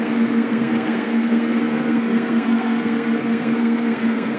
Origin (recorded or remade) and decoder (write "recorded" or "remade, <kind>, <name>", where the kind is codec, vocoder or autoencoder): remade, codec, SNAC